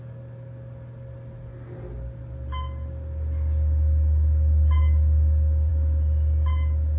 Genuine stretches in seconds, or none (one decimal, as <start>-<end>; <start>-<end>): 0.0-7.0